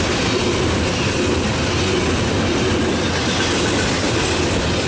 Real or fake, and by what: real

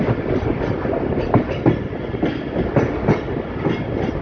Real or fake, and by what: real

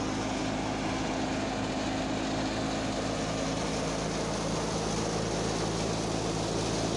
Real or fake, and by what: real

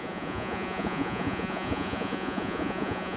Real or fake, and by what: fake, vocoder, Vocos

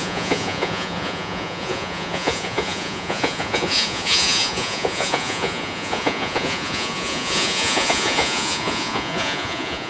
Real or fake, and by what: fake, vocoder, Vocos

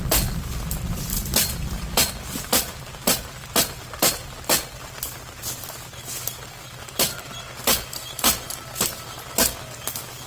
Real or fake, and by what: real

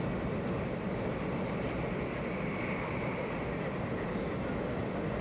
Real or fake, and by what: real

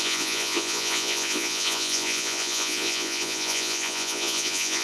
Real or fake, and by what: fake, vocoder, Vocos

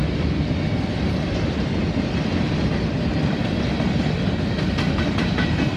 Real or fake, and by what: real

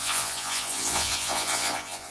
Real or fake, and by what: fake, vocoder, Vocos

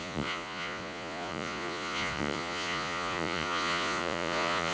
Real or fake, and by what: fake, vocoder, Vocos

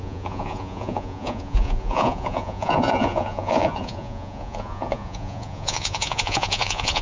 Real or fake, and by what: fake, vocoder, Vocos